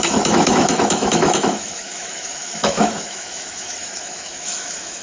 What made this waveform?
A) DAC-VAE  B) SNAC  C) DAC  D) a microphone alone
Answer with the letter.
A